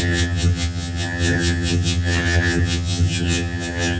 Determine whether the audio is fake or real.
fake